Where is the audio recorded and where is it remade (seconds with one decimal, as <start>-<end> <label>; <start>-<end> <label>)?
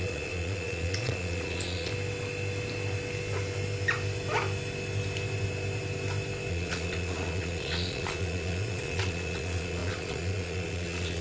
0.0-1.9 remade; 1.9-6.5 recorded; 6.5-11.2 remade